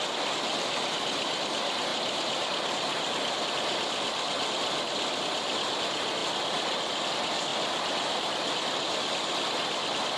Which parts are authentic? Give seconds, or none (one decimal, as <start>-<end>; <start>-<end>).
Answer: 0.0-1.9; 3.4-7.5; 9.5-10.2